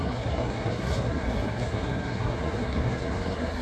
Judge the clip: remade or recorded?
remade